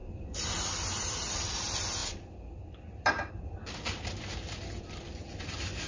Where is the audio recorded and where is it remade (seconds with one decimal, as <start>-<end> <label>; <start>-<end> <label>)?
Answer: 0.0-1.5 remade; 1.5-2.0 recorded; 2.0-3.3 remade; 3.3-5.9 recorded